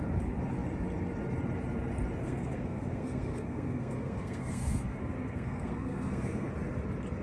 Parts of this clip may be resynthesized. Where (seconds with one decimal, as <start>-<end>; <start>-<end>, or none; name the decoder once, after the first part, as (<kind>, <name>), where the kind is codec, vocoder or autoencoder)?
2.2-6.5 (codec, SNAC)